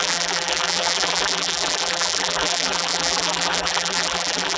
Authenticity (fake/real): fake